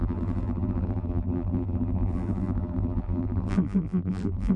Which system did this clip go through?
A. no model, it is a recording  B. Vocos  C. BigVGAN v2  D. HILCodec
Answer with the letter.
C